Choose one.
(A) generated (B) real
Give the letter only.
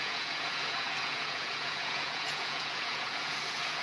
A